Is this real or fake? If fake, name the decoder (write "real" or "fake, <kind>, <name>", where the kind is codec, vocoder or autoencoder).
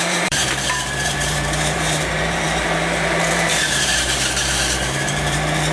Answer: fake, vocoder, BigVGAN v2